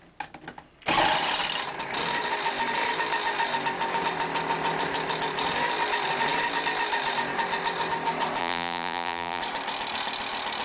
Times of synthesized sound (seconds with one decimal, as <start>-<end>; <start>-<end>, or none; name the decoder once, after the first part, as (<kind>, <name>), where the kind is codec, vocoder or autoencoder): 8.4-9.4 (vocoder, BigVGAN v2)